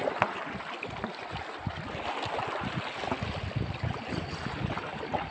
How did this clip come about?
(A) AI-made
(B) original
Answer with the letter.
B